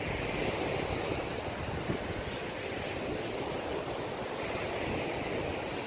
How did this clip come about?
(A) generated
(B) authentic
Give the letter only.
B